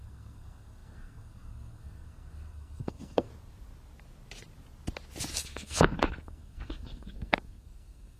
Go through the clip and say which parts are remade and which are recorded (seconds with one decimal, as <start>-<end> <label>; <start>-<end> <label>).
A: 0.0-3.3 remade; 3.3-5.3 recorded; 5.3-8.2 remade